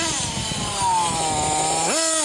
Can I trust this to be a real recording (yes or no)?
yes